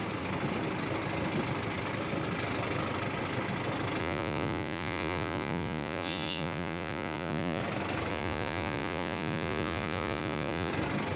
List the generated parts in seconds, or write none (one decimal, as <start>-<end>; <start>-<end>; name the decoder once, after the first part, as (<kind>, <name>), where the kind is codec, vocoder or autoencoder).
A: 4.0-7.6 (vocoder, Vocos); 8.1-10.7